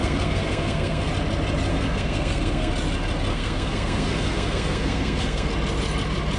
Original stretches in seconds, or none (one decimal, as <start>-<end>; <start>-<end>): 1.1-1.7; 2.7-3.3; 5.5-6.4